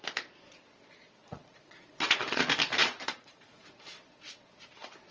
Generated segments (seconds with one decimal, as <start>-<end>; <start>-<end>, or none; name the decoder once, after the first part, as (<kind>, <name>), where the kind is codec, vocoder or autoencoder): 1.2-2.4 (vocoder, Vocos); 2.8-4.5

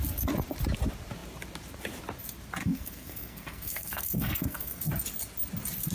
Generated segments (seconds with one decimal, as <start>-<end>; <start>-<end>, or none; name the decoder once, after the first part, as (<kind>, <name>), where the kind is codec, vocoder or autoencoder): 2.6-4.9 (codec, SNAC)

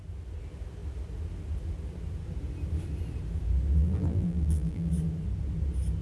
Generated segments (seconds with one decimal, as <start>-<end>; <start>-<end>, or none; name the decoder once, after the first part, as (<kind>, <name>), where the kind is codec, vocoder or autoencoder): 3.8-4.9 (vocoder, BigVGAN v2)

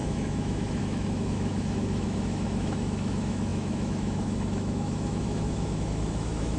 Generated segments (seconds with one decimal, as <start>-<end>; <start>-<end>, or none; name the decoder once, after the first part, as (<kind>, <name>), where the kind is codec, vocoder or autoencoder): 0.0-6.6 (autoencoder, DAC-VAE)

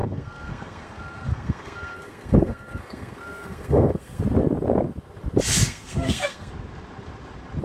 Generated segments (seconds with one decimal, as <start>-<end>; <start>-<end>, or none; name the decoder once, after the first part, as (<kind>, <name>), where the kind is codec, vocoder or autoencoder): 0.0-4.2 (codec, SNAC); 5.5-6.5